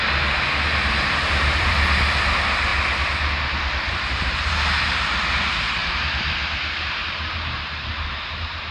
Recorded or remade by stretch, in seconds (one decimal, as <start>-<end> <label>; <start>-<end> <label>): 0.0-0.7 recorded; 0.7-1.7 remade; 1.7-5.8 recorded; 5.8-8.7 remade